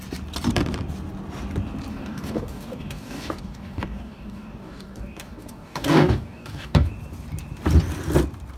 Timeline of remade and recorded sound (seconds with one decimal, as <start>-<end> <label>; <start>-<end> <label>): 0.0-1.9 recorded; 1.9-6.9 remade; 6.9-8.6 recorded